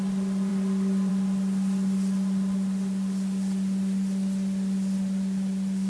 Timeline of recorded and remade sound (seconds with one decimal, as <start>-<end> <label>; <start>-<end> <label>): 0.0-5.9 recorded